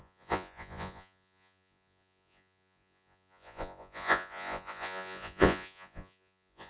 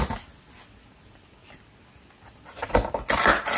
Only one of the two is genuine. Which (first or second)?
second